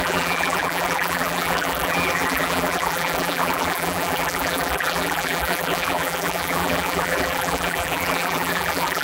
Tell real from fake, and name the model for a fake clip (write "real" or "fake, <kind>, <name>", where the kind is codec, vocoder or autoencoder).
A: fake, vocoder, BigVGAN v2